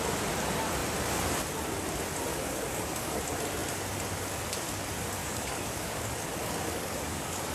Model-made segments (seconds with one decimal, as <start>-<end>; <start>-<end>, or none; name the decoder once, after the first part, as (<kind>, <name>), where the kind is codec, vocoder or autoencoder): 2.3-3.2 (codec, DAC); 5.2-7.5